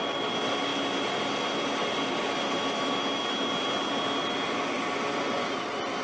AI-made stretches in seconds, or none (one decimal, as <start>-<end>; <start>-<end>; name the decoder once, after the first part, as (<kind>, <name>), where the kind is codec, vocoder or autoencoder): none